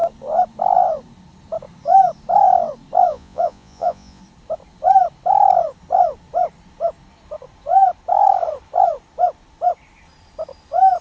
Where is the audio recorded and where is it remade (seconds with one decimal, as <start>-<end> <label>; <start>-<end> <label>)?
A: 0.0-3.1 recorded; 3.1-4.2 remade; 4.2-11.0 recorded